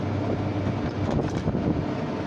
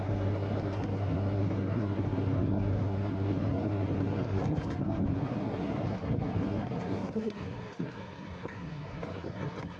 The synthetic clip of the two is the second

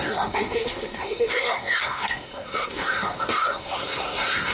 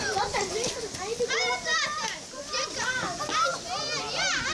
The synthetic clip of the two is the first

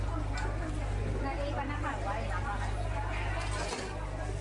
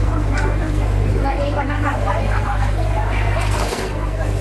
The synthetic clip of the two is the second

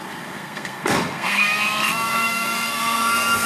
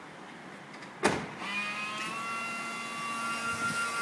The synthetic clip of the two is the first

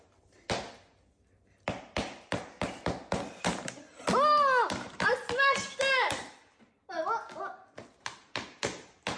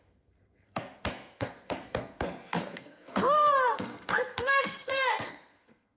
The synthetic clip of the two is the second